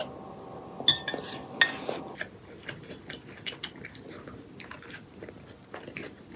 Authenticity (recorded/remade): recorded